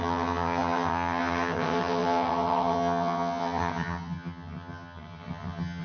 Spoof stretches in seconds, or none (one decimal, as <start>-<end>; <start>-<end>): 0.0-5.8